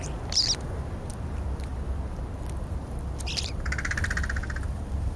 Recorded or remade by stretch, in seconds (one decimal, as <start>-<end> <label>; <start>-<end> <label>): 0.0-5.2 recorded